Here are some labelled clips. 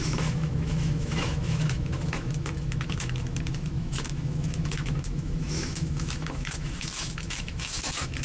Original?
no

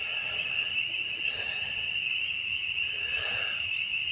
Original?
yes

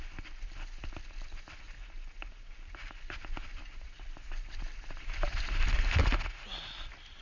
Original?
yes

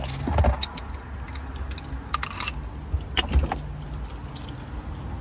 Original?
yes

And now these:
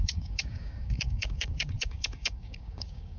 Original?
no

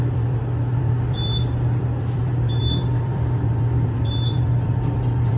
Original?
no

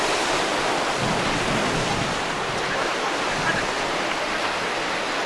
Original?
yes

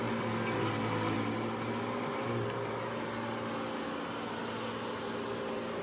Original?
yes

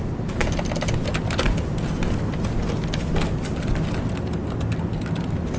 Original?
yes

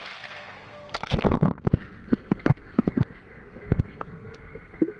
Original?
no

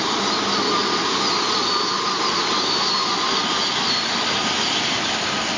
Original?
yes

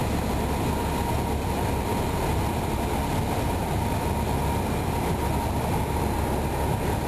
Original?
yes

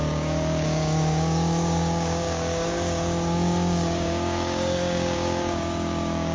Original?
no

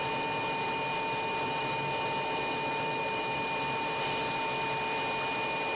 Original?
yes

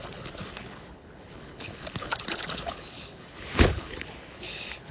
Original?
no